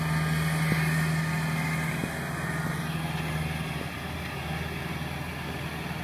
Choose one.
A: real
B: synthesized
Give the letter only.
A